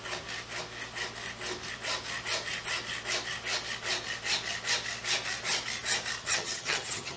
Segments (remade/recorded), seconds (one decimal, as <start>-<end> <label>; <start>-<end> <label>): 0.0-6.2 recorded; 6.2-7.2 remade